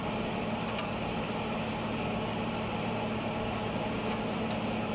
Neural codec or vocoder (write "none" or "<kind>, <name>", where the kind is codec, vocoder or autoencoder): none